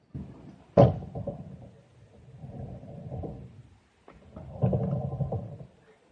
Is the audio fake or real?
real